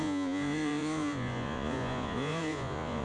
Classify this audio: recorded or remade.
remade